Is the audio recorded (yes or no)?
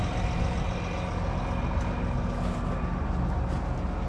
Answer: yes